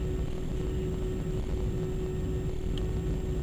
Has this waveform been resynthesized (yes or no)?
no